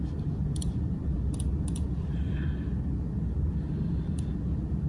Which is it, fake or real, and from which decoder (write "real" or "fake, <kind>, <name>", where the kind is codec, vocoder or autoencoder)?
real